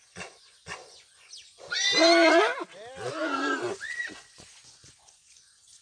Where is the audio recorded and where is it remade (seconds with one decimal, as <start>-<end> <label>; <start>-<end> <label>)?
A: 0.0-1.9 remade; 1.9-3.1 recorded; 3.1-5.8 remade